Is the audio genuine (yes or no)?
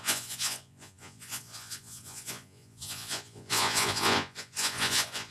no